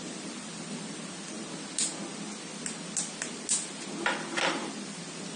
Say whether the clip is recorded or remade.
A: recorded